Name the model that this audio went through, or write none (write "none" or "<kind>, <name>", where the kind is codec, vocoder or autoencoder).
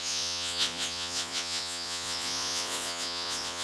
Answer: vocoder, Vocos